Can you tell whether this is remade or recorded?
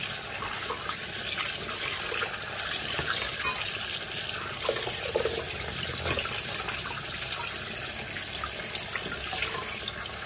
recorded